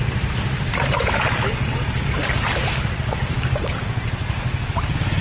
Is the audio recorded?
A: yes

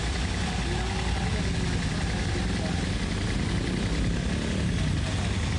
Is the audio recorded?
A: yes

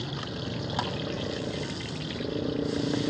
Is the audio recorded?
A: yes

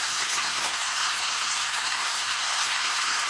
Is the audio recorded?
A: no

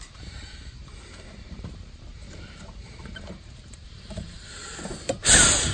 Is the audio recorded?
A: no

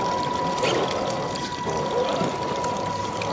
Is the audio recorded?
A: yes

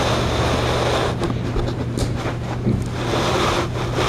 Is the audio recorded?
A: yes